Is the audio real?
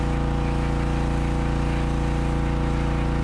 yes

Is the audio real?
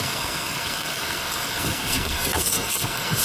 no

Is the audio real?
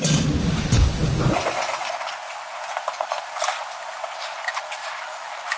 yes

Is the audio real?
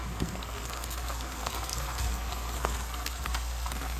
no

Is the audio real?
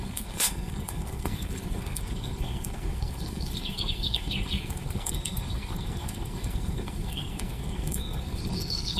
no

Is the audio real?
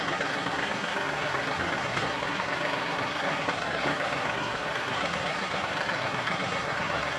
no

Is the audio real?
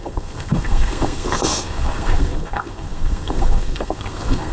no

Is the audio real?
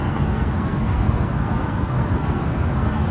no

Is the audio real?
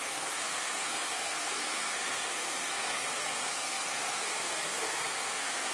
no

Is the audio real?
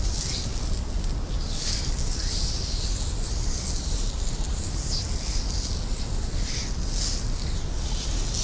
yes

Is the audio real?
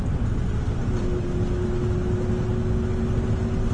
yes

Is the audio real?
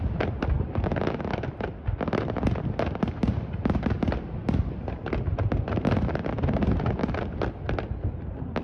yes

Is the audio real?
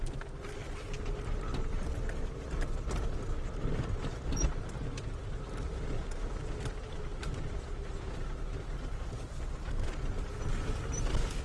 yes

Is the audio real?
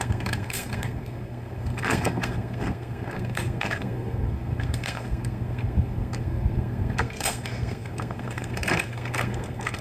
no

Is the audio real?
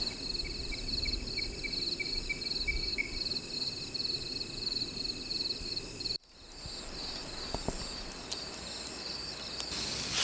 yes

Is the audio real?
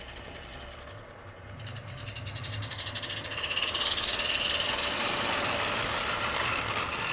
yes